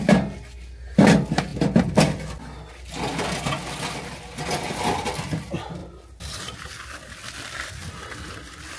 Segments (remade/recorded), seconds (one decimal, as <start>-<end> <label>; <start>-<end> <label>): 0.0-8.8 recorded